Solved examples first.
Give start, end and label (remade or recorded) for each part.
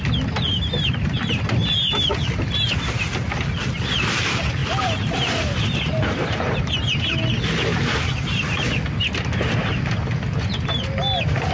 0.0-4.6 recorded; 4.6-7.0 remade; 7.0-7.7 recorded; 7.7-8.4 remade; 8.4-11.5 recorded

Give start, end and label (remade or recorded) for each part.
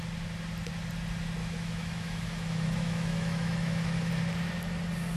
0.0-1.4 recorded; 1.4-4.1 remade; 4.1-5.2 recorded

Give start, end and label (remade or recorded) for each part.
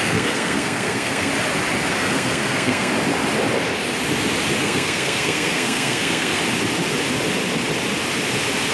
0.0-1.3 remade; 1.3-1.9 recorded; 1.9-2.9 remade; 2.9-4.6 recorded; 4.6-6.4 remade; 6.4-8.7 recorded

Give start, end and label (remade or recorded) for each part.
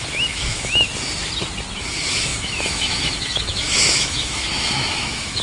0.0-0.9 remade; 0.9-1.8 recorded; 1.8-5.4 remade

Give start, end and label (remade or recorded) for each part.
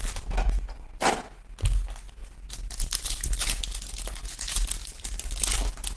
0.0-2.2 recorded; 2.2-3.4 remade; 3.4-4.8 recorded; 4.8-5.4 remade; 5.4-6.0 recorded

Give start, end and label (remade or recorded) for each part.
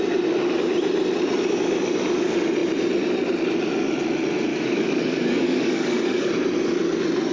0.0-4.5 recorded; 4.5-6.3 remade; 6.3-7.3 recorded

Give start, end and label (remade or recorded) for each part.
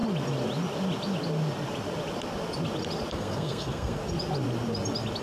0.0-3.1 recorded; 3.1-4.0 remade; 4.0-5.2 recorded